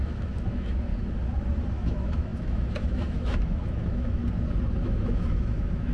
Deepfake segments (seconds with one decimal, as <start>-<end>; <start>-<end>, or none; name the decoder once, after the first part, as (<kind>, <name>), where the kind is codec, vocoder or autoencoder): 0.0-0.9 (autoencoder, DAC-VAE); 1.7-4.2; 4.8-5.9